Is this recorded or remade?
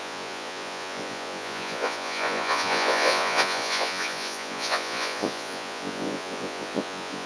remade